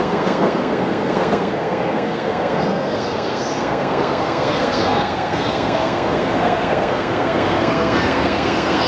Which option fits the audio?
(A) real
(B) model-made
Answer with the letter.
B